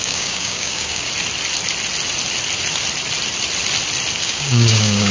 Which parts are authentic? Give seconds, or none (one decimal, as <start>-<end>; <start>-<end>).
1.1-4.2

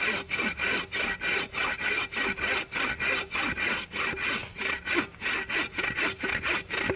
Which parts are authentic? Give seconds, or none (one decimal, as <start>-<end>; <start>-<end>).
0.0-7.0

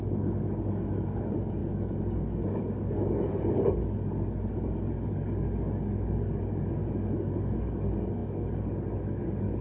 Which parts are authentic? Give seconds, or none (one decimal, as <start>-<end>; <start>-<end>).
none

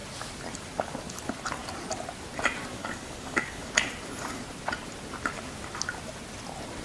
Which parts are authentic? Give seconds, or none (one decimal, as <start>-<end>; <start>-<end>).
0.0-2.7; 3.7-6.8

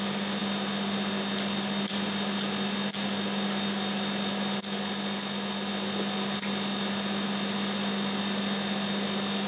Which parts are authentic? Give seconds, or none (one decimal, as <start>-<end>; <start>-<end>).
0.0-9.5

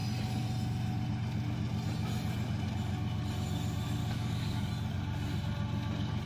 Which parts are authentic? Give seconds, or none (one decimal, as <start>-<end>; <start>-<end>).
0.0-4.0; 4.7-6.3